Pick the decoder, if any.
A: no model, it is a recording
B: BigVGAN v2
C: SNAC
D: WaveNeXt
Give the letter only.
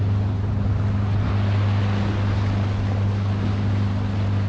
A